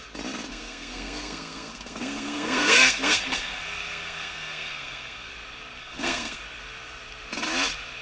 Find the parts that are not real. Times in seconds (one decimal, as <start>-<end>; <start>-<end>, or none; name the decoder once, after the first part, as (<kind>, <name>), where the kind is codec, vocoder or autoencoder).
0.5-5.3 (codec, SNAC); 5.8-6.4

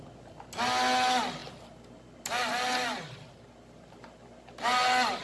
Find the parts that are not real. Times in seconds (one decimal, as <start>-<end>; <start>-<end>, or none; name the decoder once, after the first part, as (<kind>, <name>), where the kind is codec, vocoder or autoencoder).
none

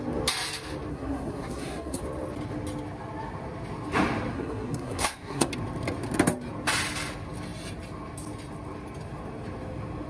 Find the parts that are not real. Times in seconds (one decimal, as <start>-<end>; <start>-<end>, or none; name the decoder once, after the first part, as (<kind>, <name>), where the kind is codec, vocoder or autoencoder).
0.9-2.0 (codec, SNAC); 4.3-5.5

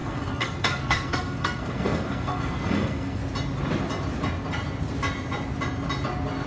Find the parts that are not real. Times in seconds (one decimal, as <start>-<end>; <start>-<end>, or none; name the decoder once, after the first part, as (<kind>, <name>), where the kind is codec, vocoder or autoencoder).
0.0-3.2 (codec, SNAC)